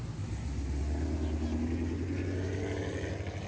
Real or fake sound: real